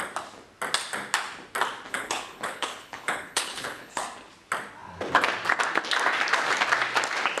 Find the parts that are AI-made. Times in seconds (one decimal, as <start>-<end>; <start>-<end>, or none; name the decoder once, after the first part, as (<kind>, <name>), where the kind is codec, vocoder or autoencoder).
1.9-4.0 (codec, HILCodec)